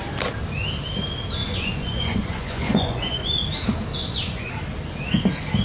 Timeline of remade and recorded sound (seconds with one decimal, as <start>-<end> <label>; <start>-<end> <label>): 0.0-1.4 recorded; 1.4-3.3 remade; 3.3-3.9 recorded; 3.9-4.5 remade; 4.5-5.6 recorded